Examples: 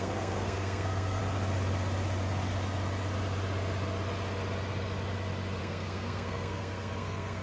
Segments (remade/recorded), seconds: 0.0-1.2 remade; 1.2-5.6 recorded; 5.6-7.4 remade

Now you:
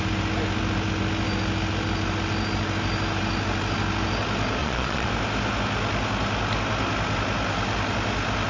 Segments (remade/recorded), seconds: 0.0-4.6 recorded; 4.6-5.1 remade; 5.1-8.5 recorded